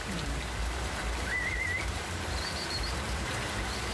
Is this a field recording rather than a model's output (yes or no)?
no